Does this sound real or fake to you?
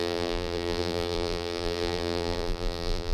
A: fake